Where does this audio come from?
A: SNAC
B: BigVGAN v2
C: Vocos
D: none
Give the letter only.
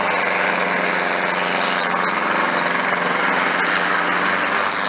D